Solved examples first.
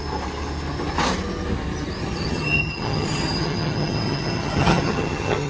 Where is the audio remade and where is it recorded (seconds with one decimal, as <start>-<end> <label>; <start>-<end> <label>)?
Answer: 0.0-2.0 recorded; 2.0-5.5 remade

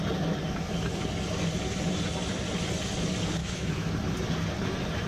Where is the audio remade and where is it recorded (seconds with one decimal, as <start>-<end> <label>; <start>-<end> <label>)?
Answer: 0.0-3.4 recorded; 3.4-3.9 remade; 3.9-5.1 recorded

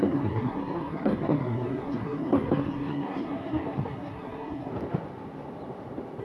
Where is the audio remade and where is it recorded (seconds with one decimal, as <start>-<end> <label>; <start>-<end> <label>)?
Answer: 0.0-4.7 remade; 4.7-6.2 recorded

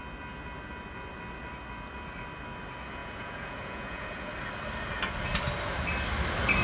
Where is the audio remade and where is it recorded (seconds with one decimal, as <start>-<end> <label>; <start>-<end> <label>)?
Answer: 0.0-3.0 recorded; 3.0-4.3 remade; 4.3-6.6 recorded

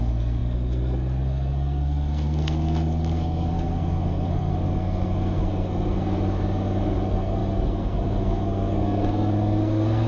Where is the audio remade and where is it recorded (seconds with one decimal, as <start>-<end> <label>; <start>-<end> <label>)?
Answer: 0.0-10.1 remade

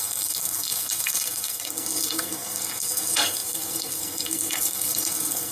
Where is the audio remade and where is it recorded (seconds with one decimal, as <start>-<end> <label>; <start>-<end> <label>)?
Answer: 0.0-5.5 remade

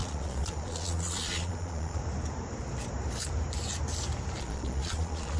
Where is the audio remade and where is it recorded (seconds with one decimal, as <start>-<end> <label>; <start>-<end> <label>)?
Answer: 0.0-2.0 remade; 2.0-4.4 recorded; 4.4-5.4 remade